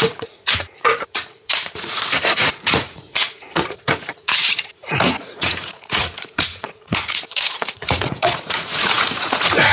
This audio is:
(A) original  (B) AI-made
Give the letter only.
B